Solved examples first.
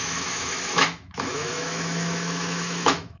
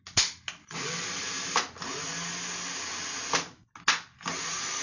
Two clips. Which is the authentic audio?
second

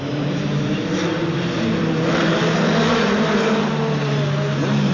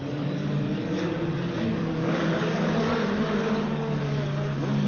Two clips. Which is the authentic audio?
first